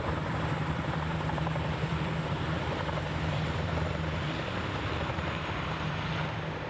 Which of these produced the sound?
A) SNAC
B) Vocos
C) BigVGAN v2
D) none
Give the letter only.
C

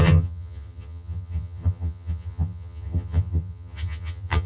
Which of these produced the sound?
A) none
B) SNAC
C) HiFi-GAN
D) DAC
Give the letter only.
C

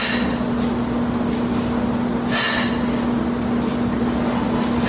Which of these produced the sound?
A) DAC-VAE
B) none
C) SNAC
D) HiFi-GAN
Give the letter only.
B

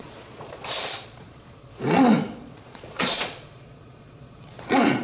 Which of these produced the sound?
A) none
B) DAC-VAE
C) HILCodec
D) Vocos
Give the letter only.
D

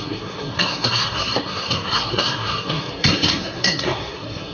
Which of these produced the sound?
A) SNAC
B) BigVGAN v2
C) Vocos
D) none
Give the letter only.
A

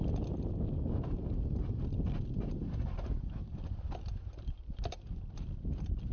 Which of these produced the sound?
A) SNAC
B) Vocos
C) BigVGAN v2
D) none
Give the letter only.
D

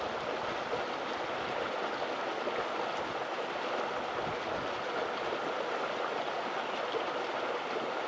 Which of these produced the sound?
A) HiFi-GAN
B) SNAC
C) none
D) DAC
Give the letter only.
C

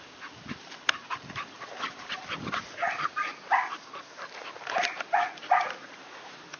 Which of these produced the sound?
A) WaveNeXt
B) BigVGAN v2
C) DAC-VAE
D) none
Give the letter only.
D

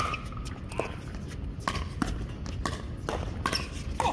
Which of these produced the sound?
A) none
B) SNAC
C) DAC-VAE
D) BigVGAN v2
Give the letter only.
A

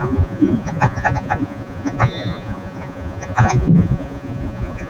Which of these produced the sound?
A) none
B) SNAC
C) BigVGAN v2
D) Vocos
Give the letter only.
D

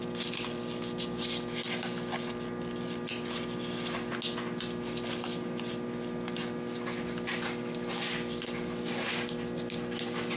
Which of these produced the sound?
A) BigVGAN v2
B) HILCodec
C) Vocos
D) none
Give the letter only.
D